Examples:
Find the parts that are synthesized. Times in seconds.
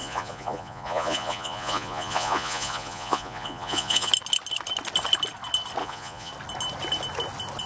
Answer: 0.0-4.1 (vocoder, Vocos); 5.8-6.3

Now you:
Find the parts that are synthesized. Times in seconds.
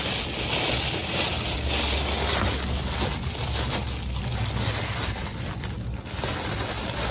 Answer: none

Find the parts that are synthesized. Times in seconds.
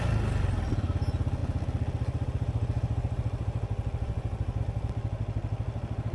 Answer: none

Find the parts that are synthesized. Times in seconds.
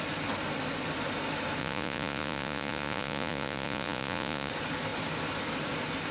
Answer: 1.6-4.5 (vocoder, Vocos)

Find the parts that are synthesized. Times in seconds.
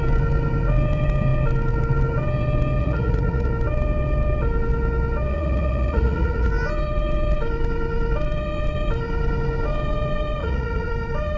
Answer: 2.8-3.5 (vocoder, Vocos); 5.3-6.5; 10.4-10.9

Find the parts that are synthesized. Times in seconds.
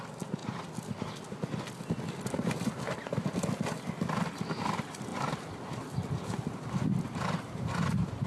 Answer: none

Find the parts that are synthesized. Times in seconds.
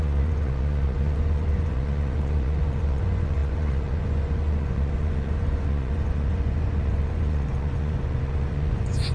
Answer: 0.0-9.1 (vocoder, Vocos)